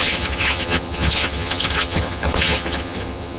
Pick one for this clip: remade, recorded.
remade